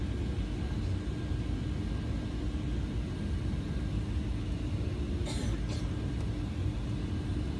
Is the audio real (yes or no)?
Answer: yes